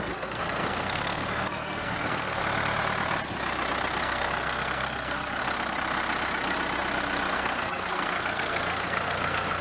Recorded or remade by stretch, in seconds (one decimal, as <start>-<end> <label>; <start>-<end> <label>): 0.0-2.4 remade; 2.4-4.0 recorded; 4.0-5.4 remade; 5.4-7.3 recorded; 7.3-9.6 remade